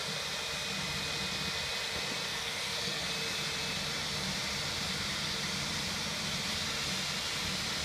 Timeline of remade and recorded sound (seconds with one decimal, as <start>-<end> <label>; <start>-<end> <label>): 0.0-2.3 recorded; 2.3-3.1 remade; 3.1-7.8 recorded